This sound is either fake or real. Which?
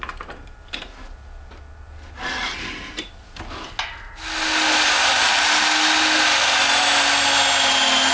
real